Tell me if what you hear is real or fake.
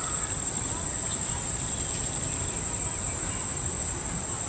fake